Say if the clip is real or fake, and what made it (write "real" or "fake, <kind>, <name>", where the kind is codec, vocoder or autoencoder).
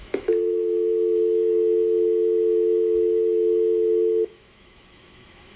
fake, autoencoder, DAC-VAE